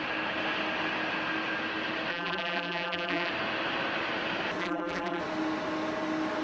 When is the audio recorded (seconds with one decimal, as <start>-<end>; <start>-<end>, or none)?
0.0-2.1; 3.3-4.6; 5.2-6.4